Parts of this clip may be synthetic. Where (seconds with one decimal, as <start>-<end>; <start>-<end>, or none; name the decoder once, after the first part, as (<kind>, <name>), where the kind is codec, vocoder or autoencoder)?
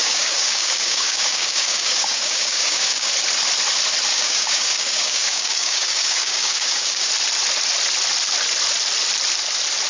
0.0-3.1 (codec, DAC); 4.1-7.1